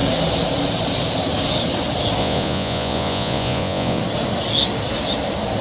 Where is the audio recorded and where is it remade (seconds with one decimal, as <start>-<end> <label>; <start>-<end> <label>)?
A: 0.0-2.2 recorded; 2.2-4.0 remade; 4.0-5.6 recorded